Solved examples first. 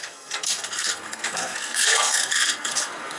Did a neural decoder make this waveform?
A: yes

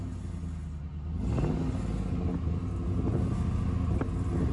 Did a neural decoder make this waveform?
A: no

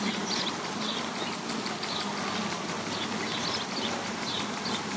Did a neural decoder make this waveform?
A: no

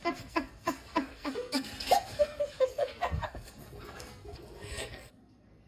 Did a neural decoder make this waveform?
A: yes